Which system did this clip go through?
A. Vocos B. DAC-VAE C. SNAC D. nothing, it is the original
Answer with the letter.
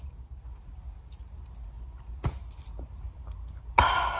D